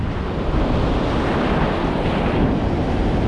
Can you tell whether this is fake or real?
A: real